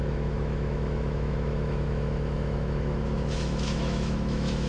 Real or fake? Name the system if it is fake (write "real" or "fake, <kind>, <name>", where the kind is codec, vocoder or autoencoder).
fake, autoencoder, DAC-VAE